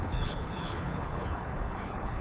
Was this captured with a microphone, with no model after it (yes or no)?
no